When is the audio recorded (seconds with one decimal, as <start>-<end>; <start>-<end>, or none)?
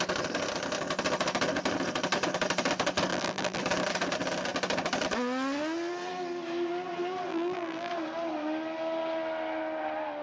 0.0-3.1; 3.6-7.3; 7.9-10.2